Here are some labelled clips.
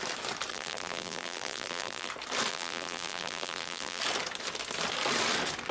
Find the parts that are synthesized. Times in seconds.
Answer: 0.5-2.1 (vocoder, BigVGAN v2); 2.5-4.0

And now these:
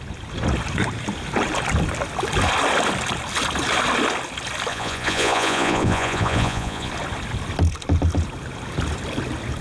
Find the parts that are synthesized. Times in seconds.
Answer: 4.7-6.9 (vocoder, Vocos)

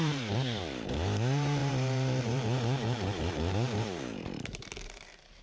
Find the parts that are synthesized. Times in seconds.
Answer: 0.0-5.4 (vocoder, BigVGAN v2)

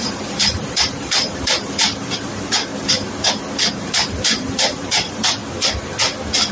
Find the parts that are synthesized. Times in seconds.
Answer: 0.0-2.7 (vocoder, BigVGAN v2); 3.7-5.4

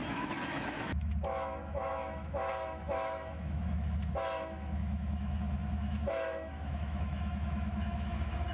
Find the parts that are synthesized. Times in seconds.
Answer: 0.0-8.5 (autoencoder, DAC-VAE)

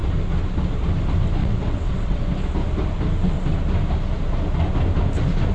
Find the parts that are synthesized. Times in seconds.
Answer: 1.4-2.2 (vocoder, WaveNeXt)